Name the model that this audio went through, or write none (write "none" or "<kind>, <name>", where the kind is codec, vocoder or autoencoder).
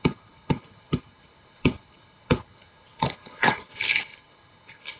codec, HILCodec